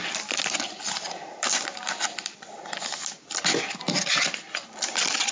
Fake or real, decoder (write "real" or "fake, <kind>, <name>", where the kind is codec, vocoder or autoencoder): real